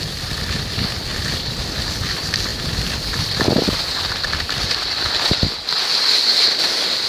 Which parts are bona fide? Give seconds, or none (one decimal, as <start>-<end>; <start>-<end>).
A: 0.0-1.1; 1.8-7.1